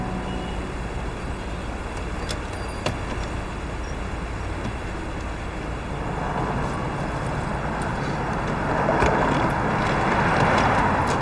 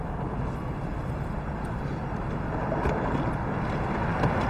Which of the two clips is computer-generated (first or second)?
second